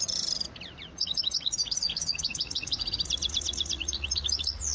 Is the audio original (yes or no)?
no